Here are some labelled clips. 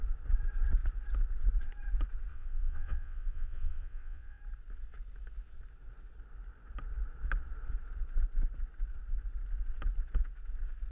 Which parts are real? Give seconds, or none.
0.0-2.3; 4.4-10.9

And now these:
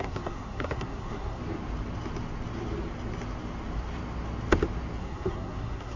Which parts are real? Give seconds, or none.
1.4-5.0

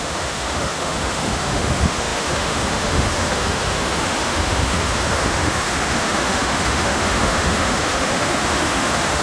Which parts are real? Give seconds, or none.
none

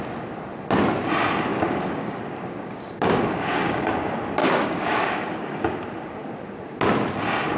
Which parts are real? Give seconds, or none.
0.0-1.5; 3.9-4.4; 5.8-7.6

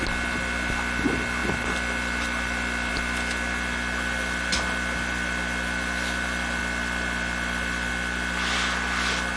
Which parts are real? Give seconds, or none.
0.0-6.6; 7.9-9.4